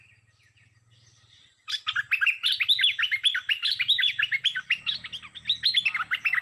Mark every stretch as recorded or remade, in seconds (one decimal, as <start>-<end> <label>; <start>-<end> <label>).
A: 0.0-6.4 recorded